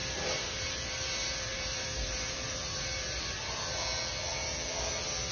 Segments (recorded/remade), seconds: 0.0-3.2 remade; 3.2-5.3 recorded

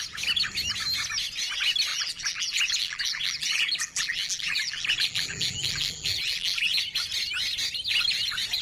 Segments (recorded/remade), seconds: 0.0-1.9 recorded; 1.9-6.8 remade; 6.8-8.6 recorded